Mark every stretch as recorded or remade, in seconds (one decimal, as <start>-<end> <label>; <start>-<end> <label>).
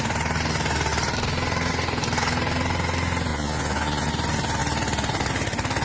0.0-3.3 recorded; 3.3-4.1 remade; 4.1-5.8 recorded